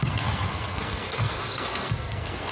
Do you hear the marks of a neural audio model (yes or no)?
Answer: yes